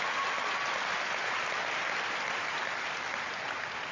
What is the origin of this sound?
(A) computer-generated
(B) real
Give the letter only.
B